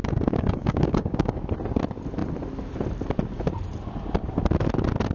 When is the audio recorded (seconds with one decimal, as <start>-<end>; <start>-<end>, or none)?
1.3-5.1